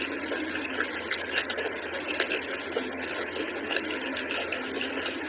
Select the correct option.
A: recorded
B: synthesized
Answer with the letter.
A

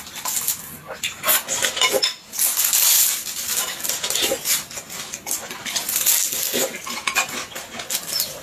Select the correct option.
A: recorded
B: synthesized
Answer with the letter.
A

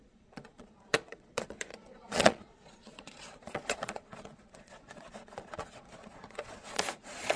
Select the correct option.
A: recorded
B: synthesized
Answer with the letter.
B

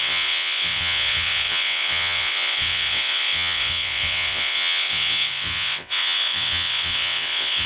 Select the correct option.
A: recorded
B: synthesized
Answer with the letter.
B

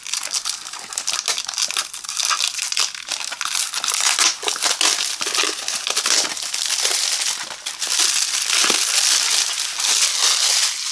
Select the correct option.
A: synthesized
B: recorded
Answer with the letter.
B